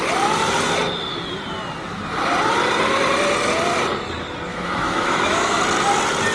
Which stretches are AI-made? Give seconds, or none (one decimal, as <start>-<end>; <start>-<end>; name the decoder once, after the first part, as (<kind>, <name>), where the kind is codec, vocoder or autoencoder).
4.5-5.6 (autoencoder, DAC-VAE)